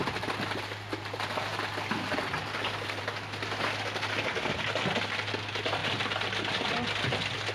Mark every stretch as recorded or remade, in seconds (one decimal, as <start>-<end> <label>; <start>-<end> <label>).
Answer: 0.0-7.5 recorded